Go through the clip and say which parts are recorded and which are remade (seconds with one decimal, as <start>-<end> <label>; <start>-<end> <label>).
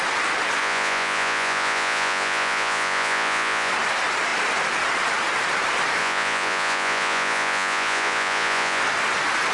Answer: 0.0-0.6 recorded; 0.6-3.7 remade; 3.7-6.0 recorded; 6.0-8.8 remade; 8.8-9.5 recorded